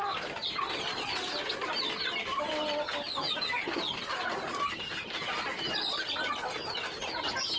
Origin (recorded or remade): recorded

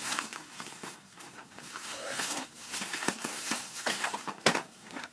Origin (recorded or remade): remade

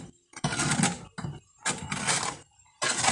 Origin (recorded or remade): recorded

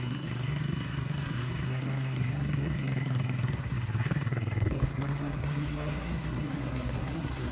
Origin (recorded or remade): remade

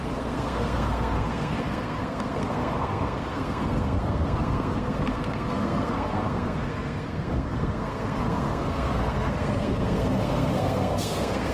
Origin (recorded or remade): remade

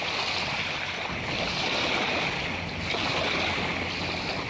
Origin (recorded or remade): recorded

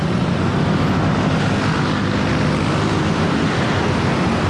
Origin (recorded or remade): recorded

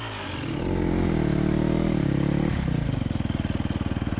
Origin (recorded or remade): recorded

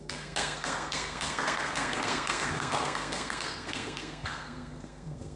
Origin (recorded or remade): remade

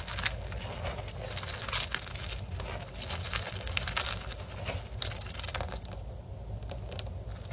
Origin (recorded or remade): recorded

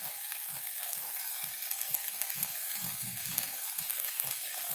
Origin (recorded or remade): remade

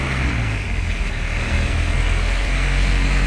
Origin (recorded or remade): remade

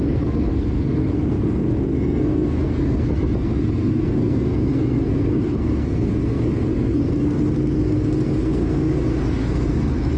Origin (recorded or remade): remade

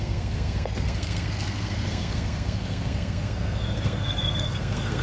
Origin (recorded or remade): remade